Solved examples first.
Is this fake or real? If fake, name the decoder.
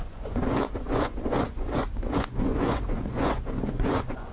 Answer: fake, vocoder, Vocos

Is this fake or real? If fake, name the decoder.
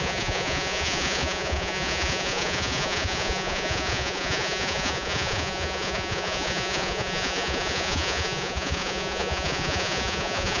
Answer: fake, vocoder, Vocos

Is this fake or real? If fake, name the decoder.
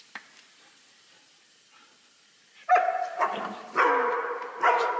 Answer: real